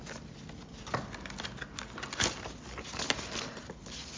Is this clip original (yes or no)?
yes